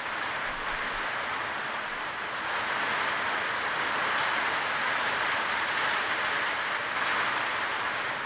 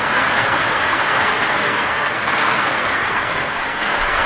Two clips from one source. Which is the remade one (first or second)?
second